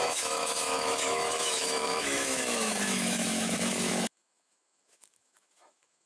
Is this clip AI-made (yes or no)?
yes